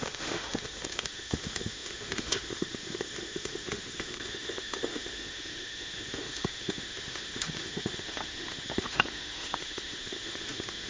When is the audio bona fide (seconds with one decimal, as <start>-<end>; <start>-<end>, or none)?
none

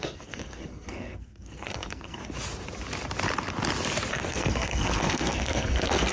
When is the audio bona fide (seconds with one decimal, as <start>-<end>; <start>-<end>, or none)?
2.2-4.1

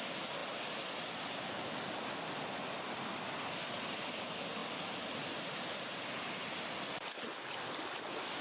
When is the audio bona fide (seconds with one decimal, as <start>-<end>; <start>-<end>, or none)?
0.0-8.4